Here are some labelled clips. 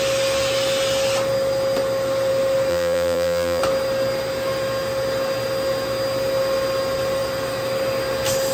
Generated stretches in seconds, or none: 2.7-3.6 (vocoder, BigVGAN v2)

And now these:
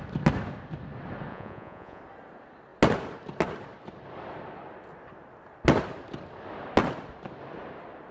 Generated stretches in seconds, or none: 1.3-2.0 (vocoder, Vocos)

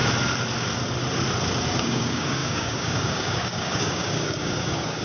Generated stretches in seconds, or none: 1.8-5.0 (codec, DAC)

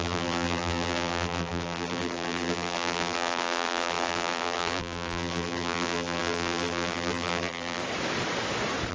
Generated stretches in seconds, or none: 0.0-7.8 (vocoder, BigVGAN v2)

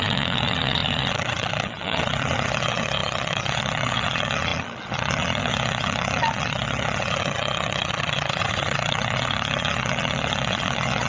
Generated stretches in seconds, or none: 0.0-11.1 (vocoder, Vocos)

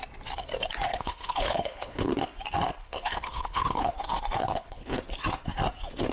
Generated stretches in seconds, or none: 0.9-2.1 (codec, HILCodec); 2.8-3.9; 4.4-5.0

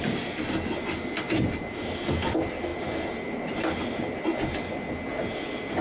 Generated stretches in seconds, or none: none

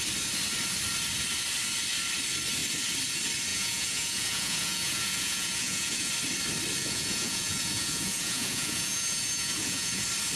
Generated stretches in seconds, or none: 3.5-6.1 (vocoder, Vocos); 6.8-10.0